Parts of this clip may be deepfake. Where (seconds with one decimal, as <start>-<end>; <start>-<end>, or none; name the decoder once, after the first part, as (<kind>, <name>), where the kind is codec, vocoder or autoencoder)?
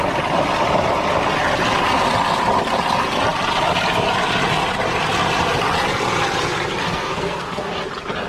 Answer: 6.8-7.8 (codec, SNAC)